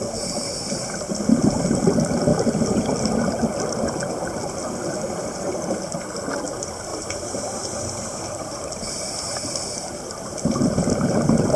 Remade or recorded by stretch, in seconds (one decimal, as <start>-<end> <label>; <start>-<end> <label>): 0.0-6.9 recorded; 6.9-11.6 remade